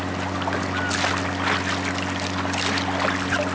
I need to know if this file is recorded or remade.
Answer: recorded